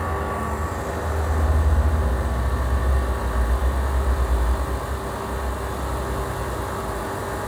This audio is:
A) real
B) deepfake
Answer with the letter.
A